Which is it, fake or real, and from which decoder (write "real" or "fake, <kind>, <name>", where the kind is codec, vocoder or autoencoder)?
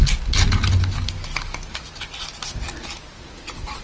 real